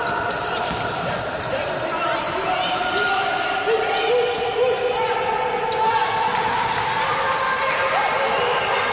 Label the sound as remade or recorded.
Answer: recorded